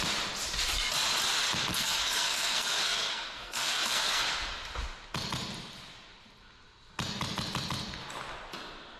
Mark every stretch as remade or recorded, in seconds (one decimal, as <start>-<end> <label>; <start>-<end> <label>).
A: 0.0-1.7 recorded; 1.7-4.5 remade; 4.5-9.0 recorded